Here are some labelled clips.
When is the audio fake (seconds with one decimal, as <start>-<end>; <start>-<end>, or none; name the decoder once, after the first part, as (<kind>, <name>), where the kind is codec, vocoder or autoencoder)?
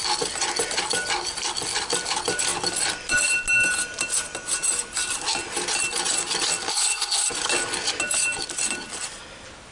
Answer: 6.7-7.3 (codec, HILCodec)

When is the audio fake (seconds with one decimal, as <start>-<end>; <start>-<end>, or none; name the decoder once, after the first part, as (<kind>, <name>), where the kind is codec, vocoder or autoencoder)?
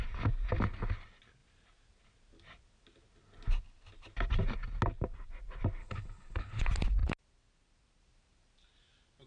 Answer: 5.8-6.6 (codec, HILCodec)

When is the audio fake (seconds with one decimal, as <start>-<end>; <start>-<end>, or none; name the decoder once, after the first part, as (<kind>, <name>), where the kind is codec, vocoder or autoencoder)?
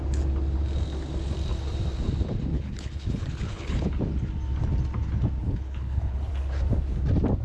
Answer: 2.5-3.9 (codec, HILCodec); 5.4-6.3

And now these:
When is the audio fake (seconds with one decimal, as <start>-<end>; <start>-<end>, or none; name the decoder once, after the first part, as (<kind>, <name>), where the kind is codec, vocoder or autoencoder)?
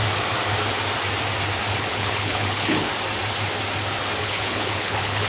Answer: 1.8-2.9 (codec, HILCodec); 4.2-5.3